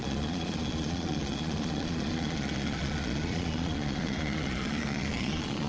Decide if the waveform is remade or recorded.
remade